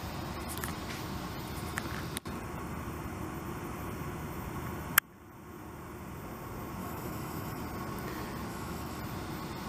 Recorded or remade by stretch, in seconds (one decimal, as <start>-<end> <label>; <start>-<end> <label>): 0.0-6.8 recorded; 6.8-7.6 remade; 7.6-8.5 recorded; 8.5-9.0 remade; 9.0-9.7 recorded